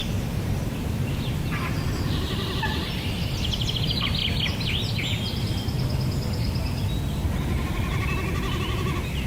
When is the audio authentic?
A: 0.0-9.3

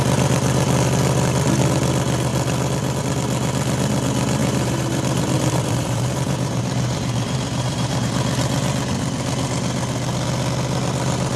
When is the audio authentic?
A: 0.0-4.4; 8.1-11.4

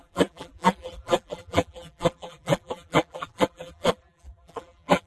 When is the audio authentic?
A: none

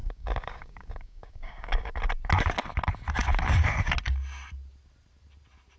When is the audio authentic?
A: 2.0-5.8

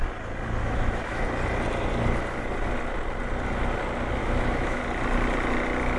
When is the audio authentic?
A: 0.0-0.6; 1.2-4.2; 4.8-6.0

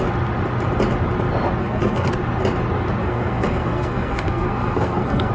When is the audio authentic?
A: 0.0-1.6; 2.1-3.0

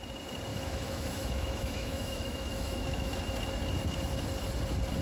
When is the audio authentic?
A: 0.0-0.5; 3.2-5.0

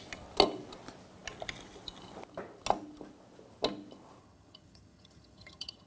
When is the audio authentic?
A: 0.0-4.2